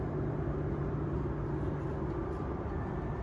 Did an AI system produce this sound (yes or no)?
no